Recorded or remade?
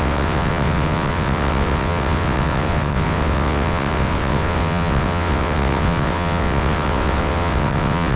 remade